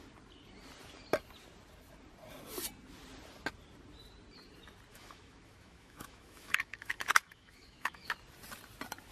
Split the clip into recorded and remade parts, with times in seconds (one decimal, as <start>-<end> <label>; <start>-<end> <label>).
0.0-4.9 recorded; 4.9-8.1 remade; 8.1-9.1 recorded